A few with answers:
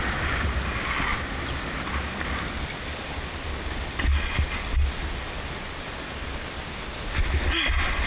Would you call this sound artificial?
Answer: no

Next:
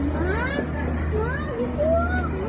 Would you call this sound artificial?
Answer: no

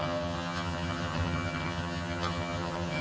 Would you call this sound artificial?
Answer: yes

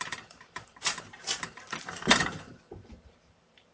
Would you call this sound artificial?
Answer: yes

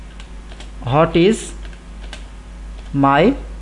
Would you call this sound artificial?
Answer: no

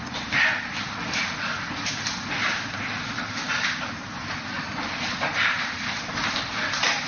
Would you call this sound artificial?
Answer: no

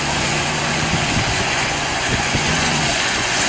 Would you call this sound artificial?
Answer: yes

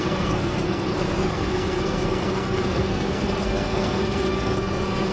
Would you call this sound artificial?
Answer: yes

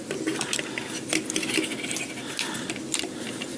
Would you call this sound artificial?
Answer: no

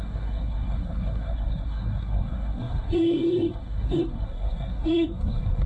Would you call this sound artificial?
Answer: yes